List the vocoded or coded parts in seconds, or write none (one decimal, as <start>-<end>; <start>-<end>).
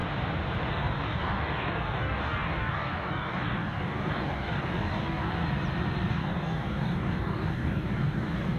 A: 0.7-5.4; 6.1-8.6